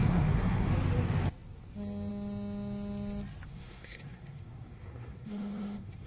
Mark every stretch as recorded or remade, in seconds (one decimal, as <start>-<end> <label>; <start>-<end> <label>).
0.0-0.7 remade; 0.7-3.5 recorded; 3.5-6.1 remade